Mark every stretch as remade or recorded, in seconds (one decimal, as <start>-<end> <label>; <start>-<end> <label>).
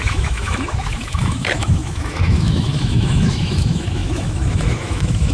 0.0-5.3 remade